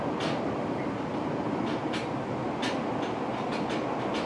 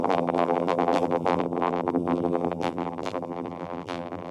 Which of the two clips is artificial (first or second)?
second